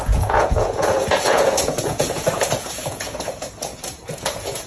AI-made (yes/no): yes